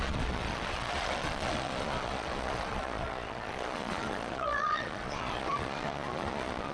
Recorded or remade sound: remade